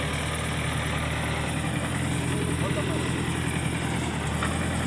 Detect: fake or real real